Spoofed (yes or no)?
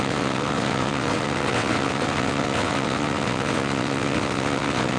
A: yes